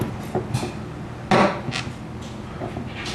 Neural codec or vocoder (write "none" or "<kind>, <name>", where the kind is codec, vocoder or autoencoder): none